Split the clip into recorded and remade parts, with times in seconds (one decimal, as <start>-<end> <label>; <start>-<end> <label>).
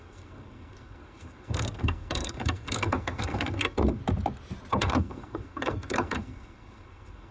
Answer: 0.0-4.0 remade; 4.0-4.7 recorded; 4.7-7.3 remade